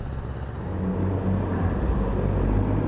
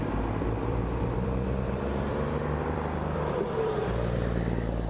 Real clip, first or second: first